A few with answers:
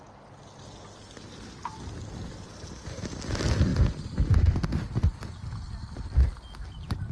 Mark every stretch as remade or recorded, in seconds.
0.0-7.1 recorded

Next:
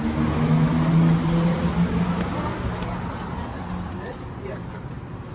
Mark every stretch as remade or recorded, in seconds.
0.0-5.3 recorded

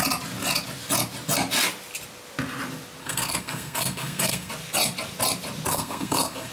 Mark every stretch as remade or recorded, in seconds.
0.0-3.0 recorded; 3.0-4.5 remade; 4.5-5.7 recorded; 5.7-6.5 remade

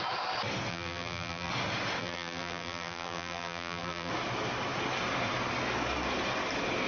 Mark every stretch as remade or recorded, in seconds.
0.0-0.7 recorded; 0.7-1.5 remade; 1.5-2.0 recorded; 2.0-4.1 remade; 4.1-6.9 recorded

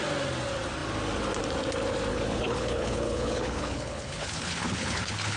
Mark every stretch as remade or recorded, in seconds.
0.0-2.1 recorded; 2.1-5.4 remade